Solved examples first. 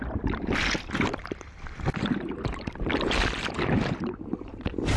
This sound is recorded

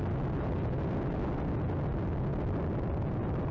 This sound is recorded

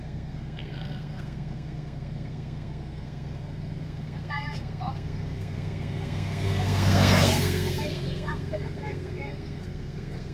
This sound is remade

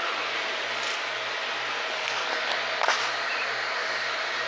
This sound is recorded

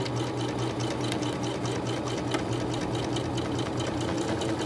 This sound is recorded